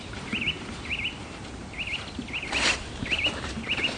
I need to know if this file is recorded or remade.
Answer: recorded